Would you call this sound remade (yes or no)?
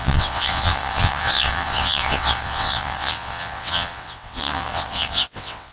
yes